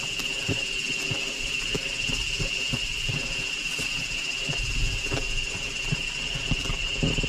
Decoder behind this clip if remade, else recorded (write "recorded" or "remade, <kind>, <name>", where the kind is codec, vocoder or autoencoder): recorded